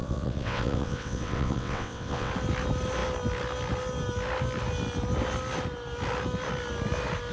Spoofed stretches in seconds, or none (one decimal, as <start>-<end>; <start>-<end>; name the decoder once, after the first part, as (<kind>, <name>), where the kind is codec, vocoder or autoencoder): 0.0-2.3 (vocoder, WaveNeXt)